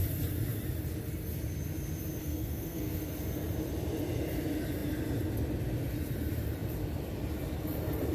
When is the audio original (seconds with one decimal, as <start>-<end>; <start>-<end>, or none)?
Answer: 0.0-2.2; 3.0-8.1